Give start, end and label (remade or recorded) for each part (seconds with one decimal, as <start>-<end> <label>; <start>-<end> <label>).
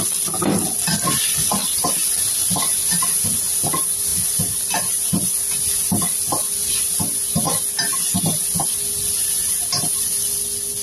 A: 0.0-10.8 recorded